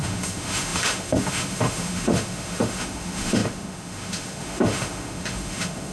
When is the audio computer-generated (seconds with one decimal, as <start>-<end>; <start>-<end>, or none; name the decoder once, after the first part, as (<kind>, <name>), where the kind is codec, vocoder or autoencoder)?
0.0-5.9 (autoencoder, DAC-VAE)